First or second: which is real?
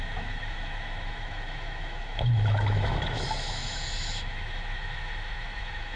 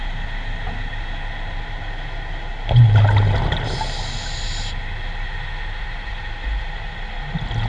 second